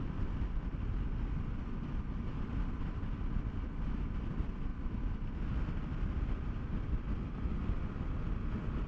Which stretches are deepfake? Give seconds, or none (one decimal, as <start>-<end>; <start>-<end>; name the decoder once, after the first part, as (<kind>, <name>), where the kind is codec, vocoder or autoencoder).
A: none